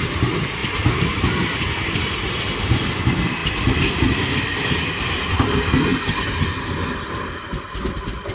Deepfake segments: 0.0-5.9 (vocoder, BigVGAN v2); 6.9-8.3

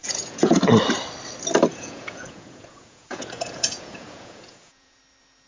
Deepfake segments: 0.0-0.6 (vocoder, Vocos); 1.7-5.0

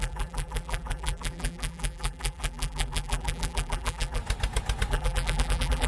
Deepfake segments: 0.0-4.2 (vocoder, BigVGAN v2); 4.9-5.9

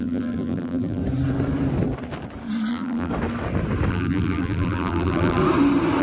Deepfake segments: 0.0-1.0 (vocoder, BigVGAN v2); 2.7-3.1; 3.9-5.4

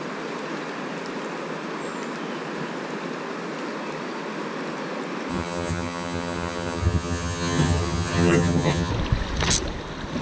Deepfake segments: 5.3-8.9 (vocoder, HiFi-GAN)

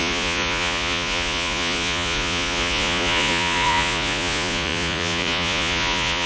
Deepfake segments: 0.0-6.3 (vocoder, Vocos)